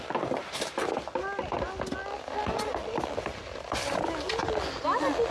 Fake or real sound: real